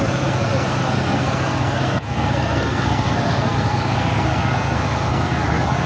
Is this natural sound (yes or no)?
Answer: no